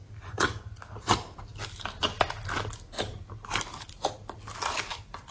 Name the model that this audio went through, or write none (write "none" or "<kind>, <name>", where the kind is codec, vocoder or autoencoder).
none